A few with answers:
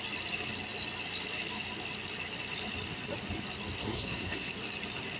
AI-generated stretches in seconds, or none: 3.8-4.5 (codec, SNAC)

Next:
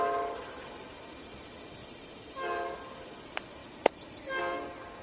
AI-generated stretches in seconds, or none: none

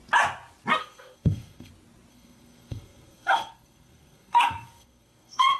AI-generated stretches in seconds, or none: 0.8-1.7 (codec, SNAC); 2.1-5.6

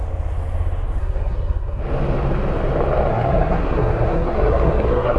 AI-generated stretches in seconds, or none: 1.0-1.8 (codec, SNAC); 3.1-5.2

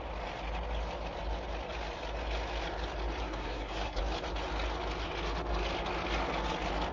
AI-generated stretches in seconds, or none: 3.2-4.0 (codec, SNAC)

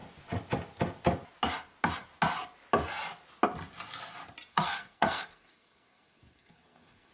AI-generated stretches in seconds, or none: 4.5-7.1 (codec, SNAC)

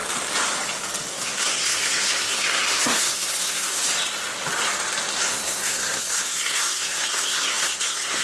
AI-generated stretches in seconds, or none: 1.1-3.8 (codec, SNAC); 5.3-8.2

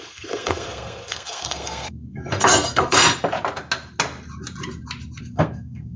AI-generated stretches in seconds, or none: 0.0-3.0 (codec, SNAC); 5.2-6.0